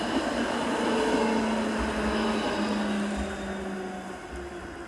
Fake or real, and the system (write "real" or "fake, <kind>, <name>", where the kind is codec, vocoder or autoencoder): real